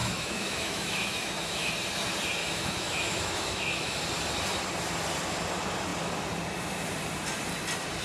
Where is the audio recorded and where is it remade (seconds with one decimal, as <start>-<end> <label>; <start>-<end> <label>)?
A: 0.0-1.7 remade; 1.7-2.4 recorded; 2.4-4.0 remade; 4.0-8.0 recorded